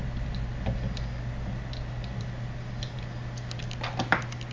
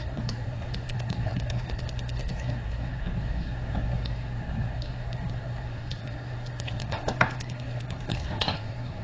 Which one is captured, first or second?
first